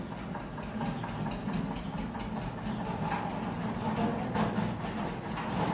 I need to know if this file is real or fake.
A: real